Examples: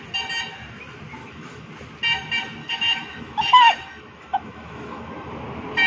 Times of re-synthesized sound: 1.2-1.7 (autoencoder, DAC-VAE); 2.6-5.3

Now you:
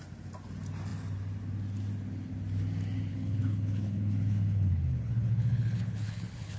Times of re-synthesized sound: 3.1-6.6 (codec, HILCodec)